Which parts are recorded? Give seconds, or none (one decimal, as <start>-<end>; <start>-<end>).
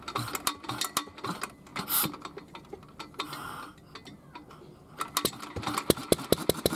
0.0-6.8